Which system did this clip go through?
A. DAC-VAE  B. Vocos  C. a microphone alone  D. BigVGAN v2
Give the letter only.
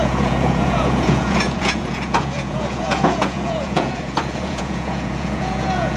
B